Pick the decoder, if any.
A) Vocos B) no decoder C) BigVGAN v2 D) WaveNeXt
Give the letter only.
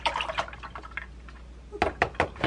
B